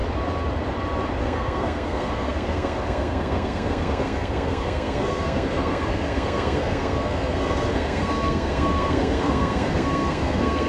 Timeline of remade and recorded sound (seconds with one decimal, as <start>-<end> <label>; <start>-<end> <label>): 0.0-1.2 recorded; 1.2-10.7 remade